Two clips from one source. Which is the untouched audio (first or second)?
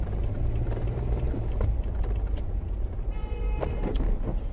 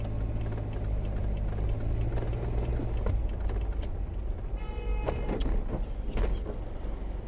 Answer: second